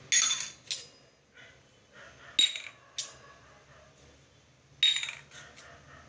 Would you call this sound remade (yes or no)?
no